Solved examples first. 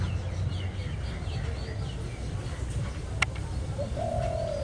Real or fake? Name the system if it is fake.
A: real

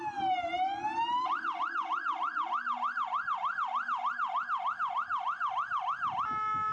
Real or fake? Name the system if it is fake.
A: real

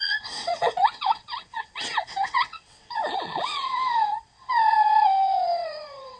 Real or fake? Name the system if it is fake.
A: fake, vocoder, WaveNeXt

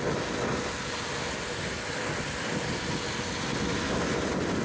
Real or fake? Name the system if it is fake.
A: real